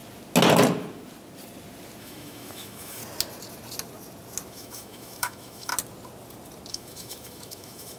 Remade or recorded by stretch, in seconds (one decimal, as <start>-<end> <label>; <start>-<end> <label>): 0.0-2.0 recorded; 2.0-3.0 remade; 3.0-4.5 recorded; 4.5-5.7 remade; 5.7-6.7 recorded; 6.7-8.0 remade